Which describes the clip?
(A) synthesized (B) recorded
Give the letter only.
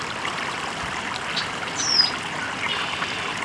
B